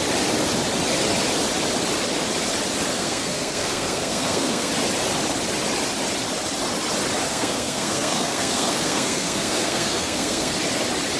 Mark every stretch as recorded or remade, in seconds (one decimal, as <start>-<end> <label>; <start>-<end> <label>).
0.0-2.9 recorded; 2.9-4.7 remade; 4.7-7.3 recorded; 7.3-10.5 remade; 10.5-11.2 recorded